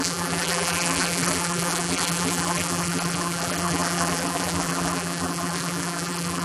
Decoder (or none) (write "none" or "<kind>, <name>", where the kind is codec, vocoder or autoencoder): vocoder, BigVGAN v2